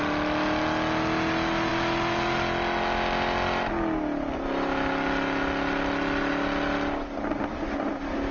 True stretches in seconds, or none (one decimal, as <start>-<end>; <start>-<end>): 0.0-8.3